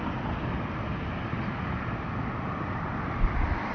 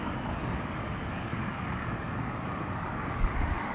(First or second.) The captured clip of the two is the first